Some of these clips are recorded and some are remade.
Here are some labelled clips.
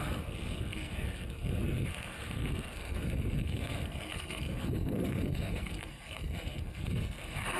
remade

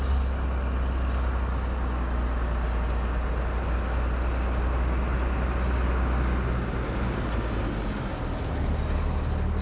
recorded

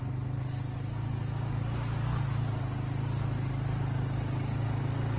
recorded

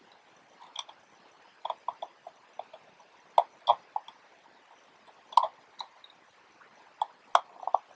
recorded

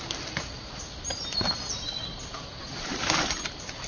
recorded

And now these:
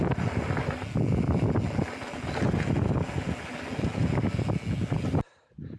recorded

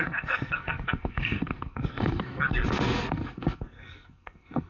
remade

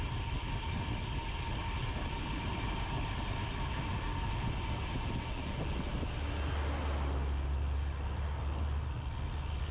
recorded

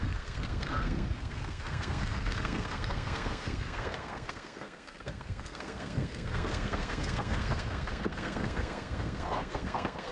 remade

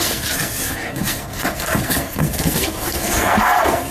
remade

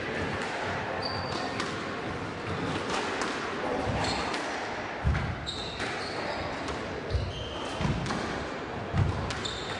recorded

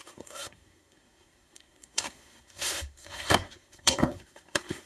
remade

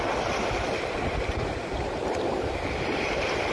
recorded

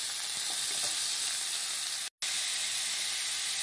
recorded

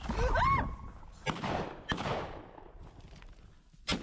recorded